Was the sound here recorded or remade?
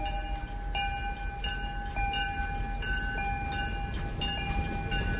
recorded